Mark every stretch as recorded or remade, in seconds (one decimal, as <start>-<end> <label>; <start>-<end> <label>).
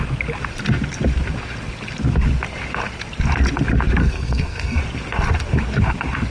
0.0-4.0 recorded; 4.0-4.8 remade; 4.8-6.3 recorded